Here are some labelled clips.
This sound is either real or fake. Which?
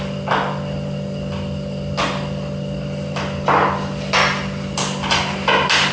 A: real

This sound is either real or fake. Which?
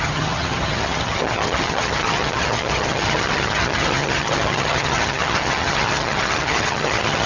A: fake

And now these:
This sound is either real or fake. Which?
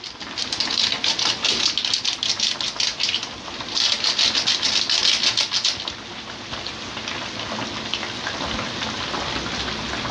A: real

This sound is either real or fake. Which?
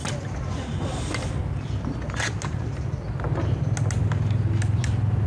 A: real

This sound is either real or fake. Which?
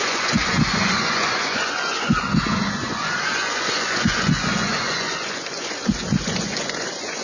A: fake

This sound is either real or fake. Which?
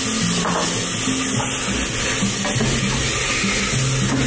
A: real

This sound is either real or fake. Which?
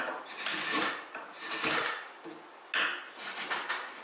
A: real